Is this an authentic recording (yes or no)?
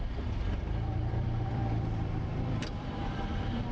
no